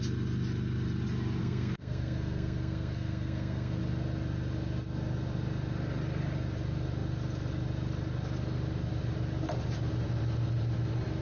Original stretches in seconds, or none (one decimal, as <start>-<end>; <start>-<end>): 0.0-1.4; 3.8-11.2